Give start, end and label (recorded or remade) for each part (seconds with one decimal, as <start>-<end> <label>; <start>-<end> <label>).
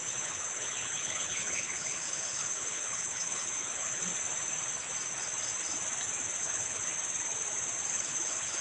0.0-4.1 remade; 4.1-6.4 recorded; 6.4-6.9 remade; 6.9-7.9 recorded; 7.9-8.6 remade